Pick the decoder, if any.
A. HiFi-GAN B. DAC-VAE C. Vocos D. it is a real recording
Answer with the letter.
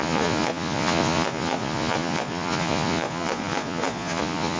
C